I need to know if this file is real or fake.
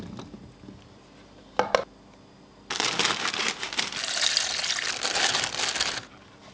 real